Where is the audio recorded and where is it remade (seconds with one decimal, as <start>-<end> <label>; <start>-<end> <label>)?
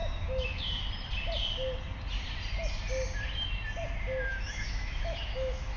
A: 0.0-0.8 remade; 0.8-4.3 recorded; 4.3-5.8 remade